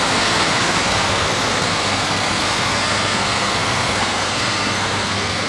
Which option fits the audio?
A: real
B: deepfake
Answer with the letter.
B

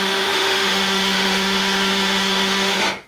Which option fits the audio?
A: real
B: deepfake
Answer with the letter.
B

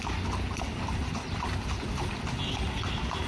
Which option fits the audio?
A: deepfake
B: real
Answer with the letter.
B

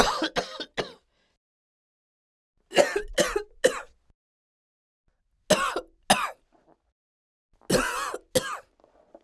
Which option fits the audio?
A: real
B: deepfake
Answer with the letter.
A